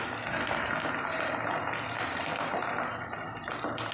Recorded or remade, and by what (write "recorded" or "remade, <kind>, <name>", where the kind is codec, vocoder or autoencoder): recorded